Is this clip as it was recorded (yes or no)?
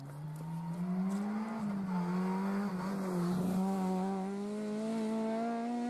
yes